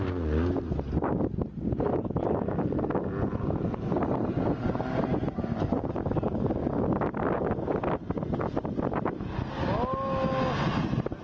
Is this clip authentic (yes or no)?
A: yes